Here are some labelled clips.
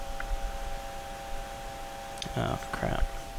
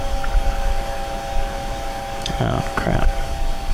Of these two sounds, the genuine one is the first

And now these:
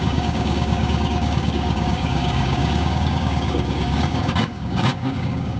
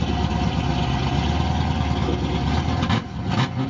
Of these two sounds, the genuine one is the second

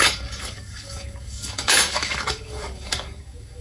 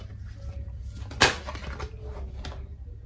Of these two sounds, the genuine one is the second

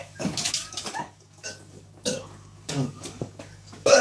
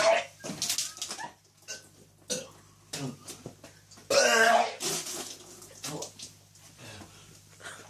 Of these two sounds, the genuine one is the second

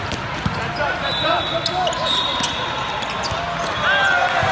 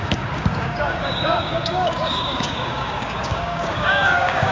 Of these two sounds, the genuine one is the first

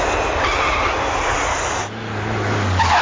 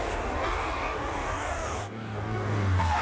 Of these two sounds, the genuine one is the first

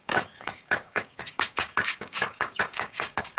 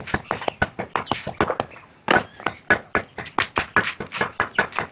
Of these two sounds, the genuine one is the second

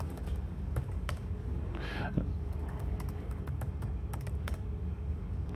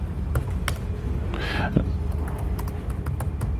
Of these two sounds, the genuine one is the second